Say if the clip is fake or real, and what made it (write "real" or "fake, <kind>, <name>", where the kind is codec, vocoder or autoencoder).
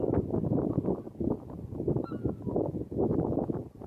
real